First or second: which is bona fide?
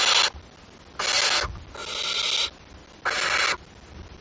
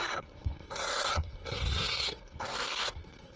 first